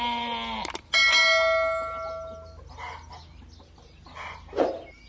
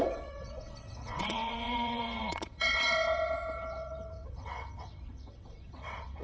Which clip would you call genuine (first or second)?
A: first